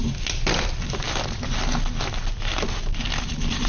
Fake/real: real